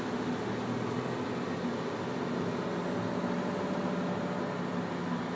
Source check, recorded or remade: recorded